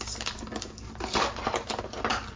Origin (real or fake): real